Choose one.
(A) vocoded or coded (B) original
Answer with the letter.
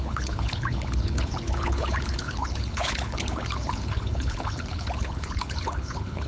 A